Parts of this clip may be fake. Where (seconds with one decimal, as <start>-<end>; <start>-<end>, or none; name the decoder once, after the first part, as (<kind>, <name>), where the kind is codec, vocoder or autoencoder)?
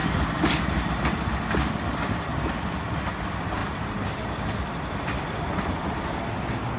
3.6-4.1 (vocoder, BigVGAN v2)